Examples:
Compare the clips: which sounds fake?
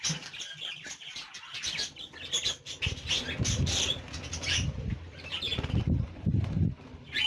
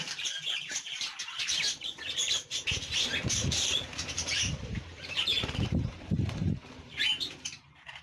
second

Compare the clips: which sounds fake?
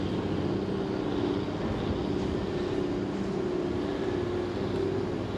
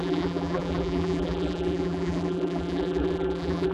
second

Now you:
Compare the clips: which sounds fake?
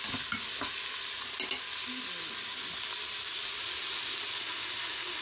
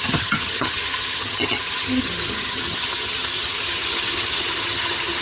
second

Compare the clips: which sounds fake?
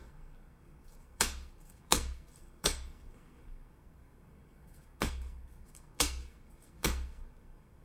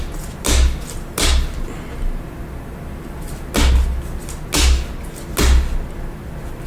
first